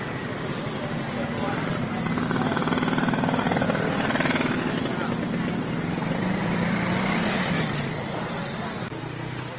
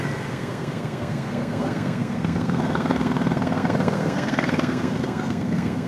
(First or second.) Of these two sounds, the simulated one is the second